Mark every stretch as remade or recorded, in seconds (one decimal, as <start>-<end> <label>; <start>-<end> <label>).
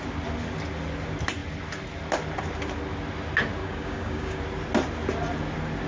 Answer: 0.0-3.6 recorded; 3.6-4.4 remade; 4.4-5.9 recorded